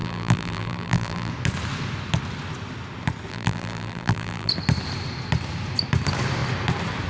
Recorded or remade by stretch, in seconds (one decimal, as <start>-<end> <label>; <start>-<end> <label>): 0.0-1.3 remade; 1.3-3.3 recorded; 3.3-4.5 remade; 4.5-7.1 recorded